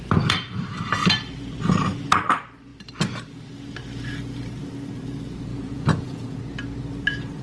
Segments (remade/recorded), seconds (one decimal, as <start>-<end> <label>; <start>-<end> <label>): 0.0-5.5 recorded; 5.5-6.4 remade; 6.4-7.4 recorded